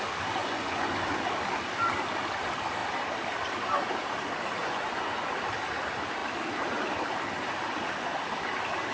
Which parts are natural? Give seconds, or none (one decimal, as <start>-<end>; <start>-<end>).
0.0-0.4; 0.9-4.6; 5.3-8.9